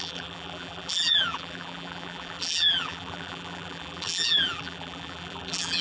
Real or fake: fake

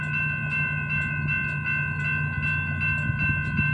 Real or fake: real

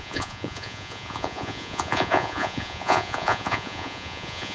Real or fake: fake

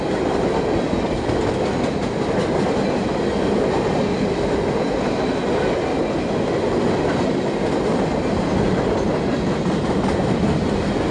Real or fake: real